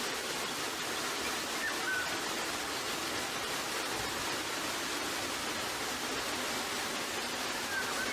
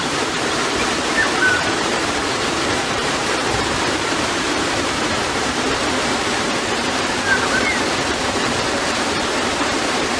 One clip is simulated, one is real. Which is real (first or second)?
first